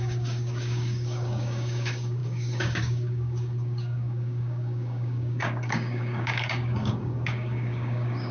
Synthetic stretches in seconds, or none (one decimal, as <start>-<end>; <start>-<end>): 0.0-8.3